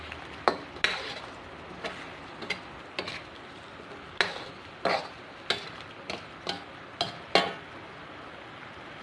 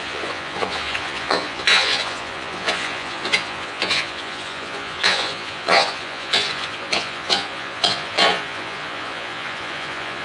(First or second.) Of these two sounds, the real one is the first